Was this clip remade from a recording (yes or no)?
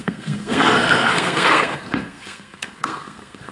yes